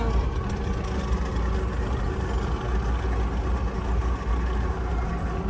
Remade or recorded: recorded